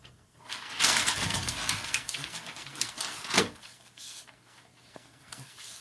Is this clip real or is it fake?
fake